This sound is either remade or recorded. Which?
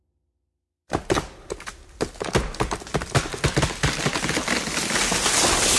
recorded